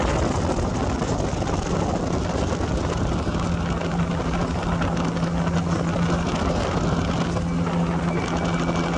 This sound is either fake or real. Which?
real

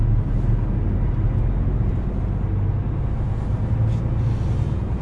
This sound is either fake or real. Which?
real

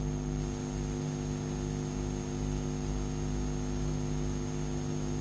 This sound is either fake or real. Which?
real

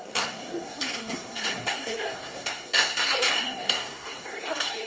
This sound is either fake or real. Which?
fake